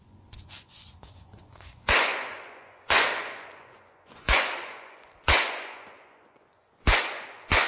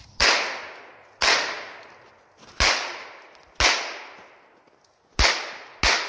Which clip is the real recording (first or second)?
second